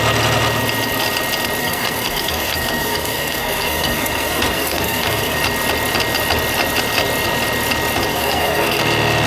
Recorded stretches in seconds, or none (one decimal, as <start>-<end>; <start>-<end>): 0.0-1.6; 5.4-8.1; 8.8-9.3